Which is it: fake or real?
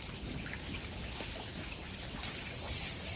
real